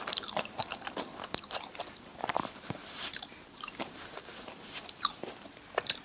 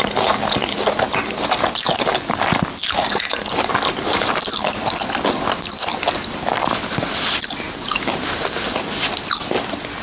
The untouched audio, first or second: second